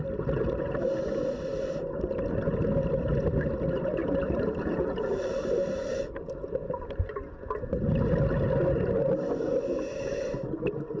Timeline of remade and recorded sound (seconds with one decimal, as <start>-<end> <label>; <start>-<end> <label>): 0.0-1.5 recorded; 1.5-2.1 remade; 2.1-4.0 recorded; 4.0-6.1 remade; 6.1-11.0 recorded